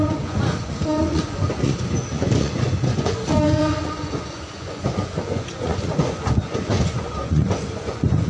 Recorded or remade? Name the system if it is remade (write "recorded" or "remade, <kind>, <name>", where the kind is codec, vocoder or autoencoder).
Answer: remade, vocoder, Vocos